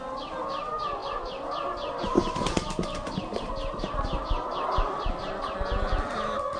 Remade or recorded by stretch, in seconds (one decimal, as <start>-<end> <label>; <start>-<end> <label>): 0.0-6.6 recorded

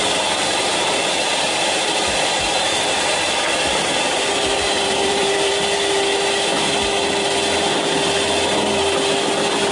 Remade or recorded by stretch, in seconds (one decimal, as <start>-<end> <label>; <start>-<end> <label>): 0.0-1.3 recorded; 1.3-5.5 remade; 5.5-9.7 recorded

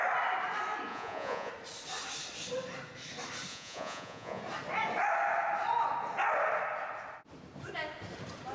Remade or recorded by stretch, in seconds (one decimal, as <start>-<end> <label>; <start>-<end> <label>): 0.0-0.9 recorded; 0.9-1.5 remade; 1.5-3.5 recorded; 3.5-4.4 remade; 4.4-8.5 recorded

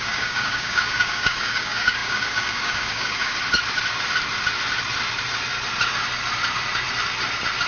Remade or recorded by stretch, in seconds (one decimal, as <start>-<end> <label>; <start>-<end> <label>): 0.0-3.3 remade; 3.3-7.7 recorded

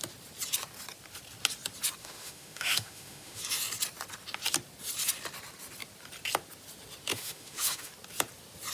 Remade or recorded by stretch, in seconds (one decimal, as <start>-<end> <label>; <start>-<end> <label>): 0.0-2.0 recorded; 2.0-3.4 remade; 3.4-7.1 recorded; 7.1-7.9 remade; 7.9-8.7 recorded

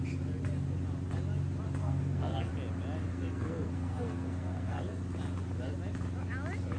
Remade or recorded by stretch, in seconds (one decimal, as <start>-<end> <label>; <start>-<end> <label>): 0.0-1.8 recorded; 1.8-2.5 remade; 2.5-3.1 recorded; 3.1-5.0 remade; 5.0-6.8 recorded

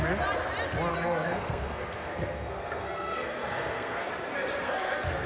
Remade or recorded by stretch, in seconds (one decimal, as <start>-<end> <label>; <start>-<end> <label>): 0.0-0.9 recorded; 0.9-4.1 remade; 4.1-4.6 recorded; 4.6-5.3 remade